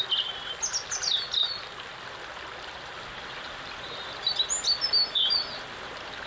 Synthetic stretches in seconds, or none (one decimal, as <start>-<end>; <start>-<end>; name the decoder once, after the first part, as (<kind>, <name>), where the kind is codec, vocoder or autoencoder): none